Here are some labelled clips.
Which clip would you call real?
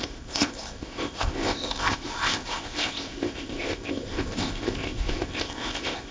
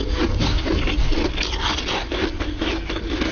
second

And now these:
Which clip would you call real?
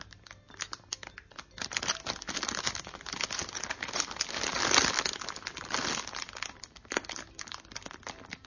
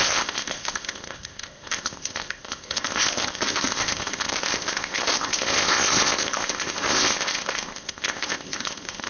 first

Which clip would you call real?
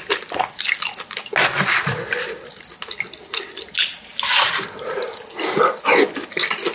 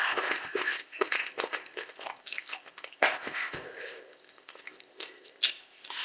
first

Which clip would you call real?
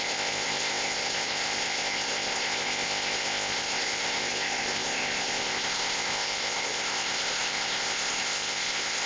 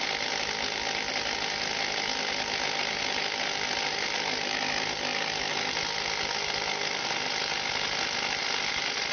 second